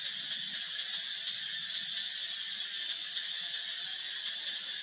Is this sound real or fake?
real